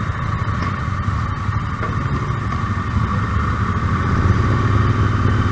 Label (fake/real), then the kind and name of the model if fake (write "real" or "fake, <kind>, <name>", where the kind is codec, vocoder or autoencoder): real